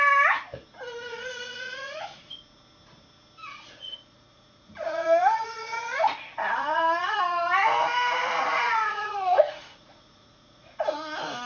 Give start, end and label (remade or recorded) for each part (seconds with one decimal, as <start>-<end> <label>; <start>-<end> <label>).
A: 0.0-1.1 recorded; 1.1-2.3 remade; 2.3-3.4 recorded; 3.4-7.2 remade; 7.2-8.5 recorded; 8.5-10.8 remade; 10.8-11.5 recorded